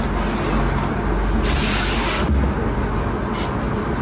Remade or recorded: recorded